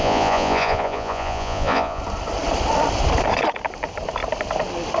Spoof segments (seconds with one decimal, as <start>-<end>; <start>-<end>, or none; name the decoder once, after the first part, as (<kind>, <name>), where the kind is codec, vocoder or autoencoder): 0.0-2.0 (vocoder, Vocos)